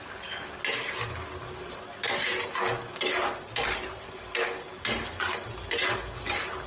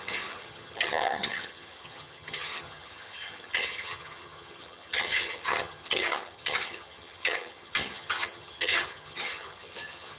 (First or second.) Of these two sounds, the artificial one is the second